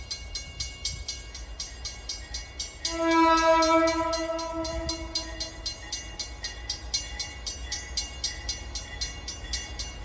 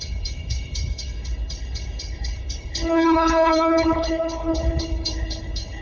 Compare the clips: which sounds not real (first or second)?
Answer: second